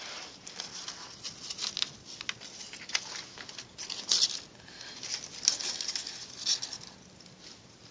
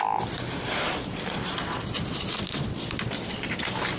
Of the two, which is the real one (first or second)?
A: first